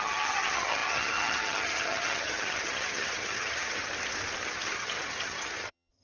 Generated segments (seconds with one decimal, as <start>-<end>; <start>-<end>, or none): 0.0-3.9; 4.4-6.0